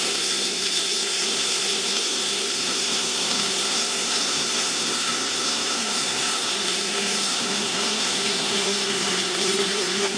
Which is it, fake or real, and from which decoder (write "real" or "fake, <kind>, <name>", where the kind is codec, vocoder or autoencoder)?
fake, codec, SNAC